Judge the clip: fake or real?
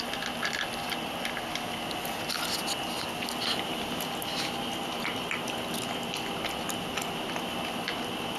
real